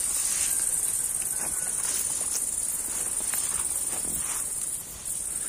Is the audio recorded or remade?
recorded